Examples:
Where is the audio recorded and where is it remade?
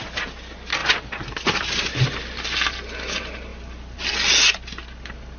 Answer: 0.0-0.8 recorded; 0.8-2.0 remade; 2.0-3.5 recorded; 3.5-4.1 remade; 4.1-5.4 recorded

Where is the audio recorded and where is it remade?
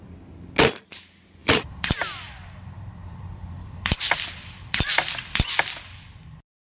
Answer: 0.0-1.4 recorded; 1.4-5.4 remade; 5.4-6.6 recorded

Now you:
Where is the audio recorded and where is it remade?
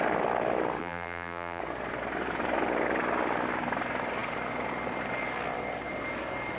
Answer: 0.0-0.8 recorded; 0.8-1.6 remade; 1.6-6.6 recorded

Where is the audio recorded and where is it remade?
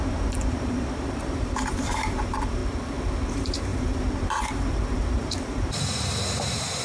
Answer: 0.0-2.6 remade; 2.6-3.3 recorded; 3.3-6.8 remade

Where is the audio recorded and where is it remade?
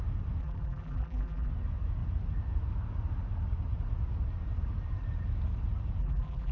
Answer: 0.0-0.4 recorded; 0.4-1.5 remade; 1.5-6.0 recorded; 6.0-6.5 remade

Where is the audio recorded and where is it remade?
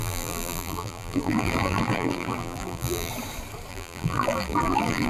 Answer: 0.0-3.1 remade; 3.1-3.7 recorded; 3.7-5.1 remade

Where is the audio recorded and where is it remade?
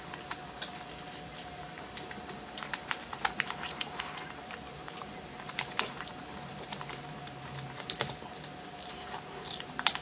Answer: 0.0-2.7 recorded; 2.7-6.9 remade; 6.9-10.0 recorded